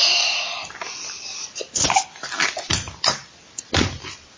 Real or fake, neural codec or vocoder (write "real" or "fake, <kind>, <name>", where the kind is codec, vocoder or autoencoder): real